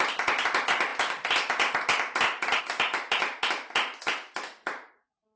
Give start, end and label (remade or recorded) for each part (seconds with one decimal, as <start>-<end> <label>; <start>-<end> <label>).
0.0-5.4 recorded